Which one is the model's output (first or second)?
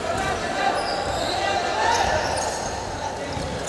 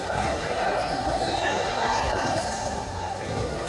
second